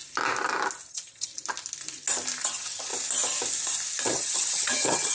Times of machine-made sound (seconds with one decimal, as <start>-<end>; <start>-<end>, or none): 0.9-1.3; 2.4-2.9; 4.0-5.1